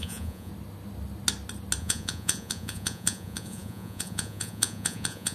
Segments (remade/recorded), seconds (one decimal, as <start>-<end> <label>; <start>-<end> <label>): 0.0-0.5 remade; 0.5-1.8 recorded; 1.8-5.3 remade